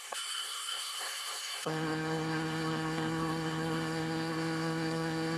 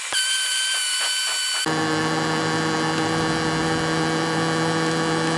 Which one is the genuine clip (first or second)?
second